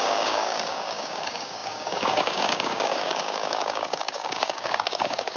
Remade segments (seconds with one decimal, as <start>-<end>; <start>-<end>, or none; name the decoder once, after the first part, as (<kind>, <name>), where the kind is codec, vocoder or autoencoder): 0.0-5.4 (codec, DAC)